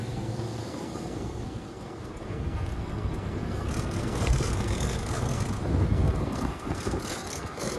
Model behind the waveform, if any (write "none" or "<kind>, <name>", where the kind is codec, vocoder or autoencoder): codec, SNAC